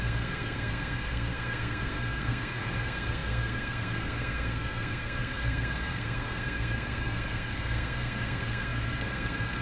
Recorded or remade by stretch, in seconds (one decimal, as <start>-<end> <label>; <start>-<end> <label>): 0.0-9.6 remade

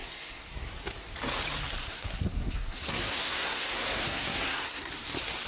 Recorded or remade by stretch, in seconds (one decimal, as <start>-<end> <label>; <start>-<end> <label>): 0.0-0.7 remade; 0.7-1.8 recorded; 1.8-5.1 remade; 5.1-5.5 recorded